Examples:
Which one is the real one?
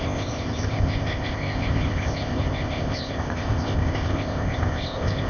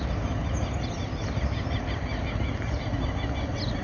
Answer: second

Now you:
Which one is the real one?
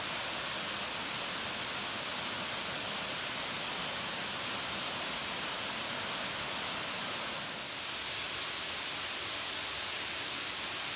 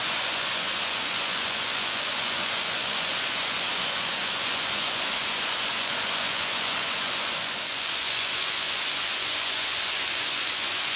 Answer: first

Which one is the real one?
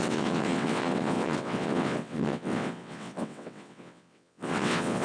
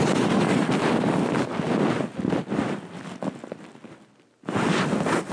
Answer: second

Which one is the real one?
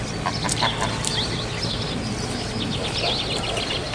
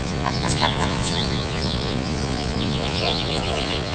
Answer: first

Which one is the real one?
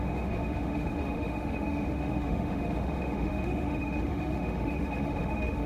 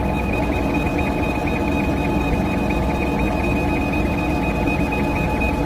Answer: second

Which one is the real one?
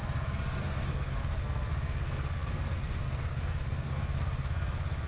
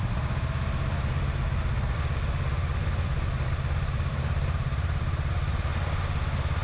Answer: second